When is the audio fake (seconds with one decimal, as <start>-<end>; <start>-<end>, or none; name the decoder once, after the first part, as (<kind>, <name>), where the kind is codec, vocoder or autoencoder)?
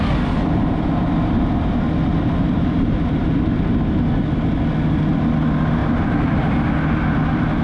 2.1-3.6 (vocoder, BigVGAN v2); 5.8-6.5